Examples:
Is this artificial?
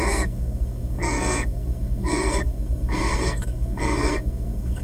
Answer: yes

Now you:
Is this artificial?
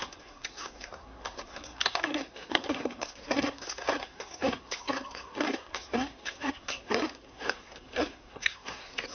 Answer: yes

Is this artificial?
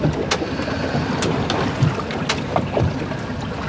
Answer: no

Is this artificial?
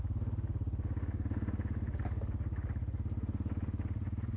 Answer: no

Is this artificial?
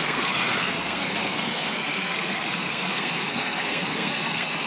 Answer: yes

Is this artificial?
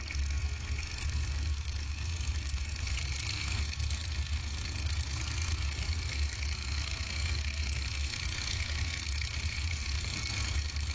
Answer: yes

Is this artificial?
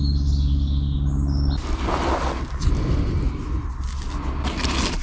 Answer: no